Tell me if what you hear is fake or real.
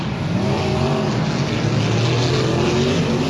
real